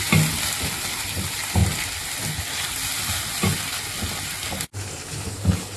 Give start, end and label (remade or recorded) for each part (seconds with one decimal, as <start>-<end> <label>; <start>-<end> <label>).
0.0-5.8 recorded